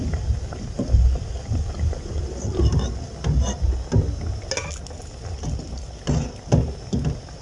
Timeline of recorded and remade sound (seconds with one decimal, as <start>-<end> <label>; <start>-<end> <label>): 0.0-7.4 recorded